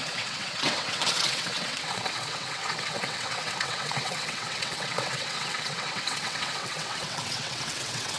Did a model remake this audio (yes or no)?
yes